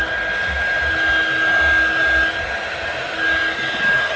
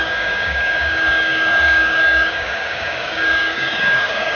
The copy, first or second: second